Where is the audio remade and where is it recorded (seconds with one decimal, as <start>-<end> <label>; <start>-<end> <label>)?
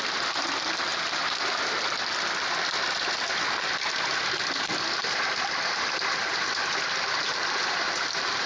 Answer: 0.0-8.5 recorded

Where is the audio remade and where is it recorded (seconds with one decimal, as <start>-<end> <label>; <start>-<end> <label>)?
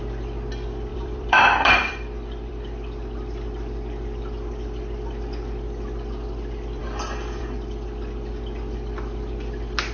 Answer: 0.0-0.9 recorded; 0.9-2.5 remade; 2.5-9.9 recorded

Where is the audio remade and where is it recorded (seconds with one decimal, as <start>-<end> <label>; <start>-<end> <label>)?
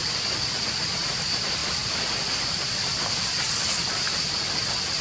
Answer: 0.0-1.6 recorded; 1.6-3.6 remade; 3.6-5.0 recorded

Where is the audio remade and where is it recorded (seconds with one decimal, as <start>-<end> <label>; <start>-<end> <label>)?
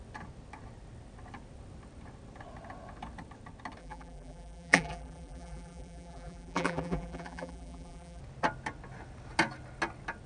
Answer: 0.0-3.8 recorded; 3.8-8.2 remade; 8.2-10.3 recorded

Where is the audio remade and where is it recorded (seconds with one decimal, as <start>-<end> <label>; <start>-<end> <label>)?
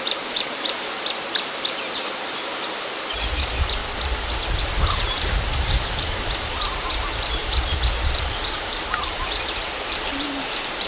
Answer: 0.0-3.8 remade; 3.8-4.6 recorded; 4.6-10.9 remade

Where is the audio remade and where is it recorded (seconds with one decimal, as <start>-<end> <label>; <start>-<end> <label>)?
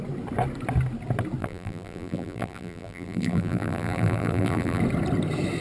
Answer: 0.0-1.4 recorded; 1.4-4.8 remade; 4.8-5.6 recorded